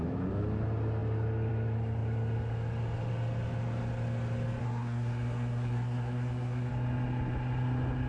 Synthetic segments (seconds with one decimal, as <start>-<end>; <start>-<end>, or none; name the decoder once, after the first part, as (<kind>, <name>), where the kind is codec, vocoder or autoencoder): 4.6-6.7 (codec, SNAC)